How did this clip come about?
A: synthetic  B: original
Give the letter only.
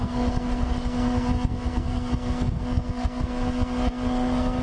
A